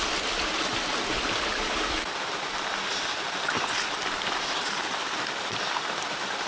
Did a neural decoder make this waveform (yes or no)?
no